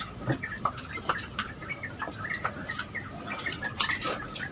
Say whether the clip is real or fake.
fake